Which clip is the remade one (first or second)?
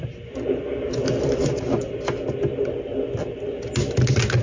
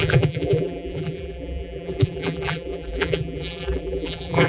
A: second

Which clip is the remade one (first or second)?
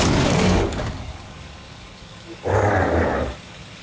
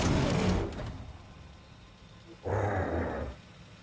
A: first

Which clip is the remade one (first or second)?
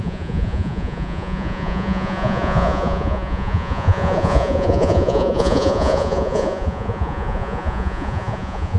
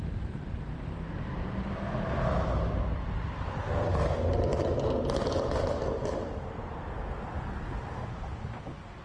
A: first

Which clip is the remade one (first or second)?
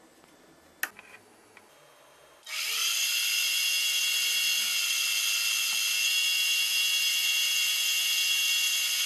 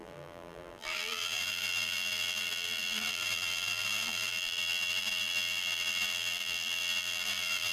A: second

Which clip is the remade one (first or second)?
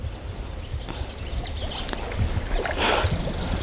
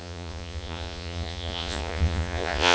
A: second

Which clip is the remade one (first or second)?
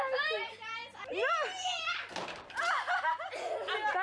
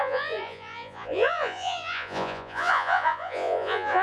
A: second